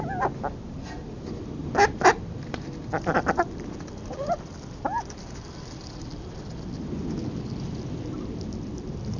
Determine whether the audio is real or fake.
real